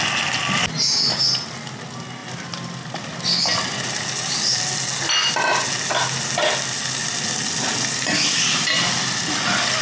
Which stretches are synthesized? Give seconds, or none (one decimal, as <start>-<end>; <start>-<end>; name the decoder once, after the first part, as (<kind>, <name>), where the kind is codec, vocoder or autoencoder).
none